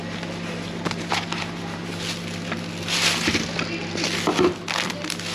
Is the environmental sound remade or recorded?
recorded